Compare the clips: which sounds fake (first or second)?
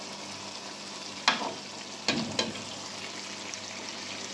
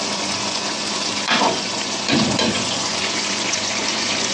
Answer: second